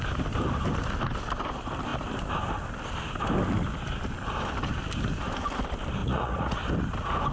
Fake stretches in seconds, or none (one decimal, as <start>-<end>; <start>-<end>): 6.0-6.6